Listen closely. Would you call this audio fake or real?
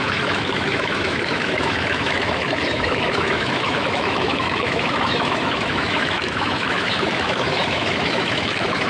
fake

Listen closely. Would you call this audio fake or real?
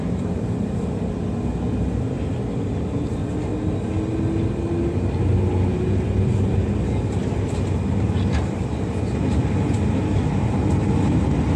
real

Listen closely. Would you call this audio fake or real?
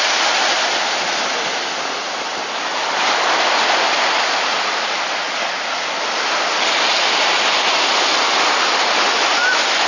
real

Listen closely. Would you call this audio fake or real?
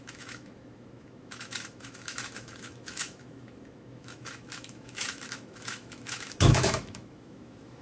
fake